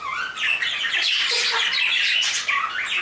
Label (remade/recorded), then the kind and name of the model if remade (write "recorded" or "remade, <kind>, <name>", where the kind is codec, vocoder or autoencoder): recorded